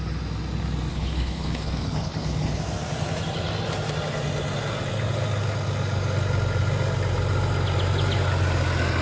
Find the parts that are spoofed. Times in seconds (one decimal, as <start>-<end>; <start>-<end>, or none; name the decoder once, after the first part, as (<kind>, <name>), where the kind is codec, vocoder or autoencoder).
0.9-2.6 (codec, HILCodec)